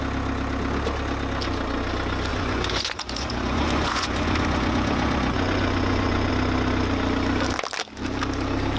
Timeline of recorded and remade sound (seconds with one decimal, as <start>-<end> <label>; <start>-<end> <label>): 0.0-2.3 recorded; 2.3-6.3 remade; 6.3-8.8 recorded